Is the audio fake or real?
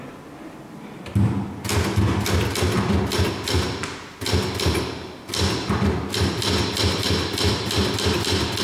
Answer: real